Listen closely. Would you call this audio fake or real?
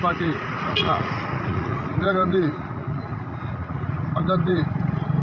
fake